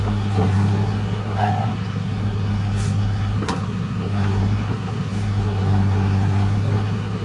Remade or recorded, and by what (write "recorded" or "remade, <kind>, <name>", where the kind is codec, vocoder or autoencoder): remade, codec, SNAC